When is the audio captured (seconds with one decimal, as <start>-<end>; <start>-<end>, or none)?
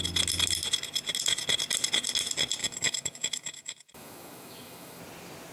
0.0-2.6; 5.0-5.5